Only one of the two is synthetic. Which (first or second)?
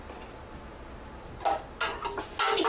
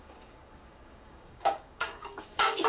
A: second